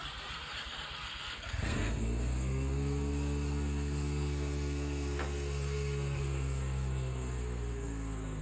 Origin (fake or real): fake